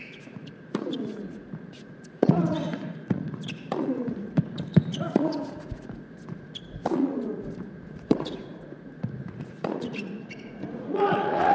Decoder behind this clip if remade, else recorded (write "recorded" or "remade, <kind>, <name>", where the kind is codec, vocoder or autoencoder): remade, vocoder, Vocos